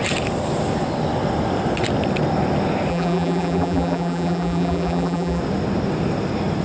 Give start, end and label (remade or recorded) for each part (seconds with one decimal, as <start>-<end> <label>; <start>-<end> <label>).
0.0-2.9 recorded; 2.9-5.4 remade; 5.4-6.6 recorded